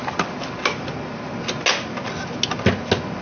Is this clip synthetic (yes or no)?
no